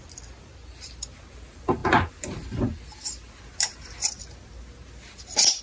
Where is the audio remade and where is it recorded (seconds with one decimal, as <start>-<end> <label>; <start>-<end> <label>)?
0.0-5.6 recorded